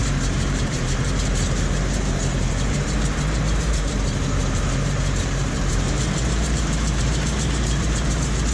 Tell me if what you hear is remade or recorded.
remade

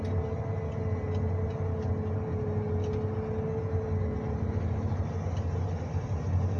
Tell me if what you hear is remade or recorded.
recorded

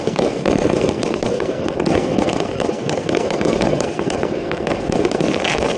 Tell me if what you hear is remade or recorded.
remade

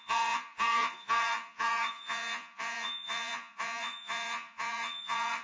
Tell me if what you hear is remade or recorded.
remade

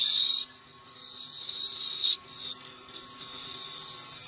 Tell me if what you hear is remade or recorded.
recorded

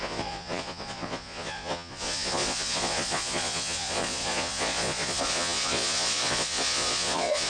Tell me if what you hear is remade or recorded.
remade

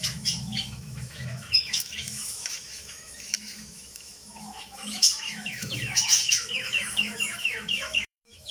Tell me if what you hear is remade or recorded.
remade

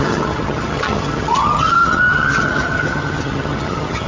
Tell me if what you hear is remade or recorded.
remade